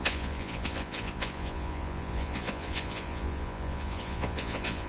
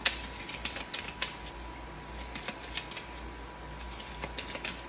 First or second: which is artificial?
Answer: first